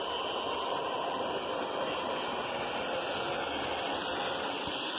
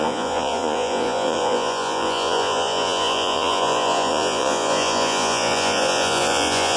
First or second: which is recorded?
first